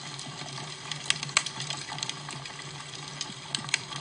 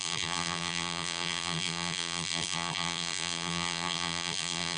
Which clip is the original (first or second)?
first